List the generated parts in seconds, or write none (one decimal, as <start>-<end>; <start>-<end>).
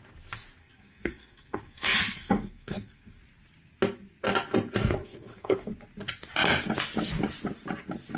0.6-3.2; 5.0-5.7